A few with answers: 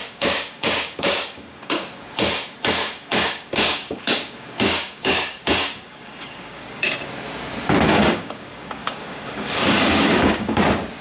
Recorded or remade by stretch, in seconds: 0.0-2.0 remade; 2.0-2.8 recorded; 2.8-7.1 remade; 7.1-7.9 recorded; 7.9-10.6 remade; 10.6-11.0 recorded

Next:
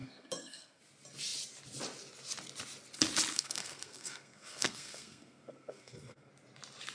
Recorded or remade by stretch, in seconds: 0.0-0.8 remade; 0.8-3.3 recorded; 3.3-6.3 remade; 6.3-6.9 recorded

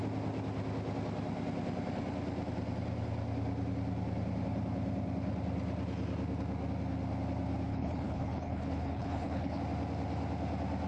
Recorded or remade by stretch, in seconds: 0.0-7.7 recorded; 7.7-9.6 remade; 9.6-10.9 recorded

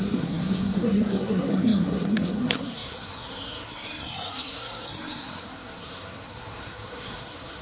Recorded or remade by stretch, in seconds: 0.0-7.6 remade

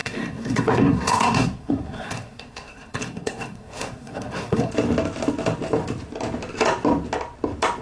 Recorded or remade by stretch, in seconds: 0.0-4.7 remade; 4.7-7.8 recorded

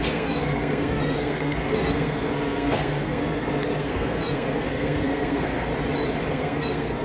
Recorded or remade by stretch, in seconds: 0.0-5.7 remade; 5.7-6.3 recorded; 6.3-7.0 remade